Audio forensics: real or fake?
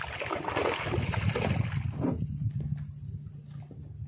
real